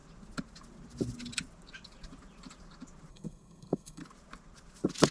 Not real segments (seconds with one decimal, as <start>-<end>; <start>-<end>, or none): 3.1-4.0